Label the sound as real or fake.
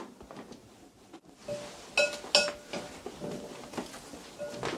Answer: real